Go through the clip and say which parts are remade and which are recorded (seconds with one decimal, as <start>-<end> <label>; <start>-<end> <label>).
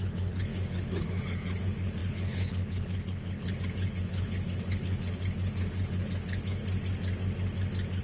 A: 0.0-6.6 remade; 6.6-8.0 recorded